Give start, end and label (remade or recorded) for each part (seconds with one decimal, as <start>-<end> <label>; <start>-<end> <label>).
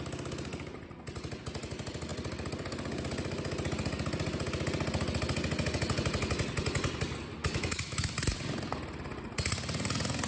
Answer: 0.0-7.4 recorded; 7.4-8.1 remade; 8.1-10.3 recorded